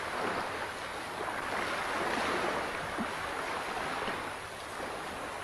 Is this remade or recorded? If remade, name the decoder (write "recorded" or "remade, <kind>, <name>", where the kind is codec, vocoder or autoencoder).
recorded